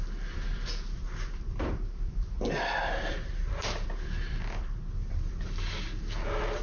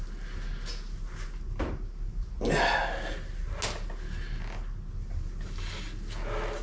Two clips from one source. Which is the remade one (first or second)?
first